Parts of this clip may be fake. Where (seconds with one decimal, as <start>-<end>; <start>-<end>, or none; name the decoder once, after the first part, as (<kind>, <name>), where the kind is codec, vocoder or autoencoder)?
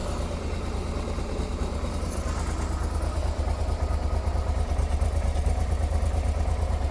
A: none